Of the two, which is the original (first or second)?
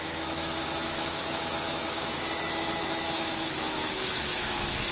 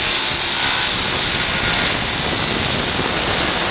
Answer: second